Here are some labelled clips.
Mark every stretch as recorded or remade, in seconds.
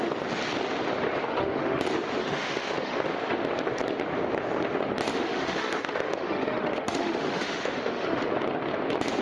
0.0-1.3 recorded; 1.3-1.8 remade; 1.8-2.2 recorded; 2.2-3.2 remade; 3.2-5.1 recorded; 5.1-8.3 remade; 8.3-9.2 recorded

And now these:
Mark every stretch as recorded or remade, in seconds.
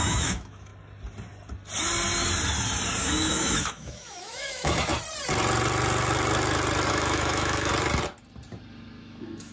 0.0-0.7 remade; 0.7-3.0 recorded; 3.0-4.9 remade; 4.9-6.9 recorded; 6.9-7.7 remade; 7.7-9.0 recorded; 9.0-9.5 remade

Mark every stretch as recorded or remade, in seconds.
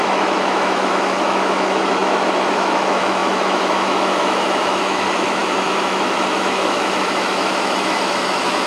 0.0-8.7 remade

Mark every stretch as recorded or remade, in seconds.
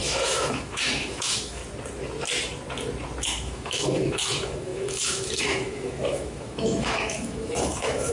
0.0-1.6 remade; 1.6-3.2 recorded; 3.2-8.1 remade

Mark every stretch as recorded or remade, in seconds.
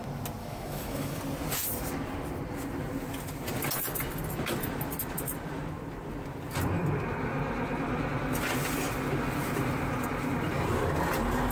0.0-0.4 recorded; 0.4-1.2 remade; 1.2-11.5 recorded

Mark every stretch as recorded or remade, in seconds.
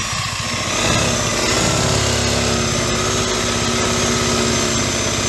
0.0-5.3 recorded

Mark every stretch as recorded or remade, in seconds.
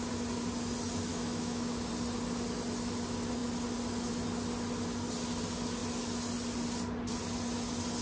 0.0-1.1 recorded; 1.1-1.9 remade; 1.9-8.0 recorded